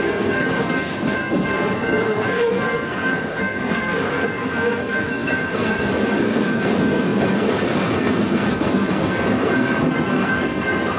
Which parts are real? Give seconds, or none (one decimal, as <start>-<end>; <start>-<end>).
none